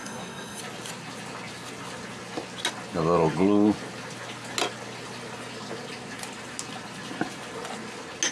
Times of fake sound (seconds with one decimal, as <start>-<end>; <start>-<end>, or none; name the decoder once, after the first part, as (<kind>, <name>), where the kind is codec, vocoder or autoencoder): 0.0-0.6 (codec, SNAC)